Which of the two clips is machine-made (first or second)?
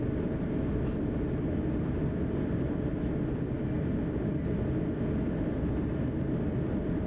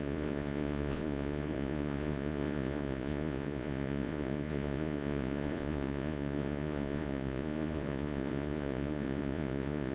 second